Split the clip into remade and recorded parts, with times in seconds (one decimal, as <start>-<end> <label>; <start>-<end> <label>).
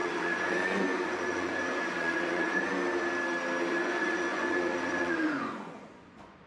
0.0-2.7 remade; 2.7-3.7 recorded; 3.7-6.5 remade